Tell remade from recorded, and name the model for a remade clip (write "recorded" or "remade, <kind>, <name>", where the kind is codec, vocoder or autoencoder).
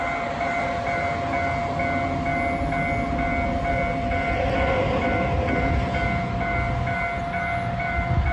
recorded